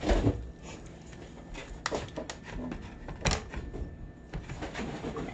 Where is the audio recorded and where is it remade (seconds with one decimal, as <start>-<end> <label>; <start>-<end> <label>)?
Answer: 0.0-5.3 recorded